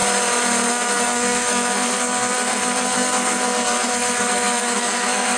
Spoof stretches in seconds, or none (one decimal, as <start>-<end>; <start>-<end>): 0.7-5.4

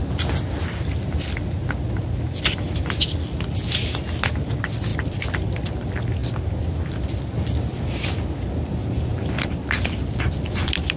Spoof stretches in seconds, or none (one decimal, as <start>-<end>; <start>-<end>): 4.9-5.5; 9.1-11.0

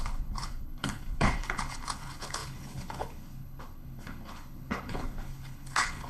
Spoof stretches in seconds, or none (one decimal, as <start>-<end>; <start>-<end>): 0.0-6.1